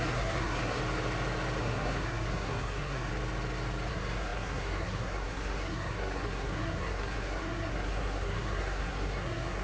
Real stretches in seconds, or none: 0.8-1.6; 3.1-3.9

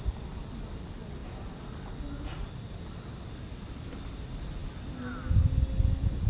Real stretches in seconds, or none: 0.0-6.3

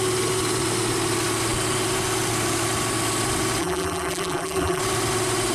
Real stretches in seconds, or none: 0.0-3.6; 4.8-5.5

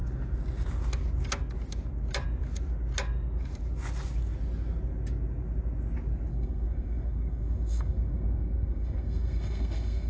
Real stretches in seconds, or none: 0.0-6.3